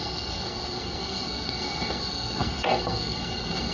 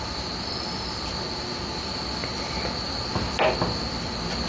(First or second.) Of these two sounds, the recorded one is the second